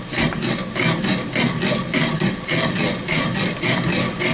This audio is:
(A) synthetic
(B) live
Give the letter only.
B